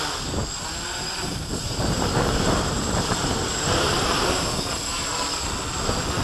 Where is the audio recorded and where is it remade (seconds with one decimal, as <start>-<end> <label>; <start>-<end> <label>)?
0.0-1.3 recorded; 1.3-3.9 remade; 3.9-6.2 recorded